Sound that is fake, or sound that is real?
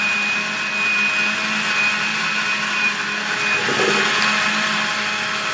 real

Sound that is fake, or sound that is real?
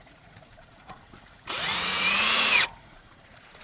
fake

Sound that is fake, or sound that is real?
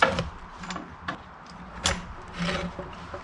real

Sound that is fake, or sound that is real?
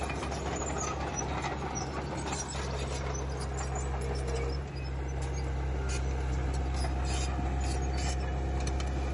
real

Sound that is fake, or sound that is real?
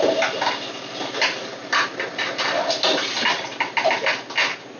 real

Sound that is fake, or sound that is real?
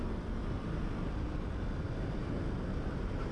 real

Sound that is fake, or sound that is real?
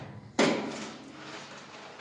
real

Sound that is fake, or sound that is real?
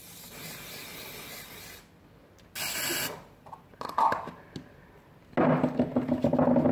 real